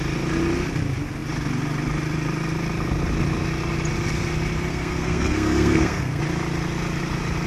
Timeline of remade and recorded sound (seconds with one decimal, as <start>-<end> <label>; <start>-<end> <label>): 0.0-4.7 recorded; 4.7-6.2 remade; 6.2-7.5 recorded